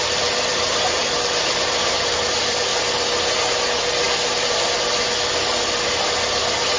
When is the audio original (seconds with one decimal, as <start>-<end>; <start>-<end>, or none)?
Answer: 2.7-6.8